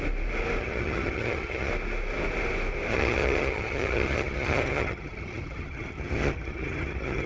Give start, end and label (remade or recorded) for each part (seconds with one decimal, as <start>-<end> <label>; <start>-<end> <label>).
0.0-0.6 recorded; 0.6-1.7 remade; 1.7-2.9 recorded; 2.9-7.3 remade